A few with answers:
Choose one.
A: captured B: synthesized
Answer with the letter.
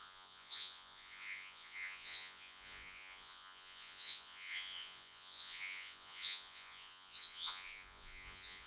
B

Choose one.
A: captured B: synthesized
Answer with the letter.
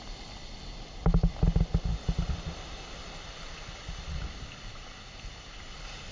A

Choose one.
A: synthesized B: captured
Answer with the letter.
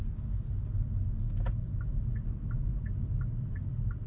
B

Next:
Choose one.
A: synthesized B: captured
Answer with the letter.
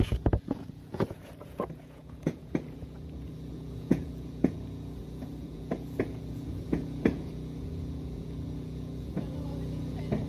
A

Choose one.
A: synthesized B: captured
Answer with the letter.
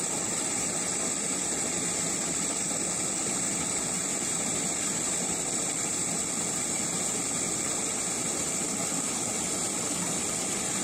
B